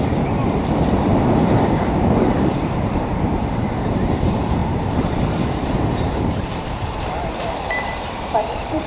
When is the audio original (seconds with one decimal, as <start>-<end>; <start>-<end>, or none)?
none